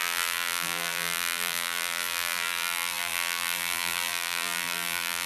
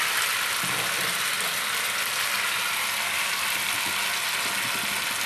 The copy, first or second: first